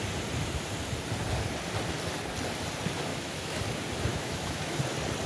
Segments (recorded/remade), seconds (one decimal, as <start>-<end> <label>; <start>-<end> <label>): 0.0-3.1 recorded; 3.1-3.6 remade; 3.6-4.1 recorded; 4.1-4.8 remade; 4.8-5.3 recorded